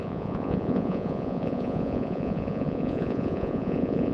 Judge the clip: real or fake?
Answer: fake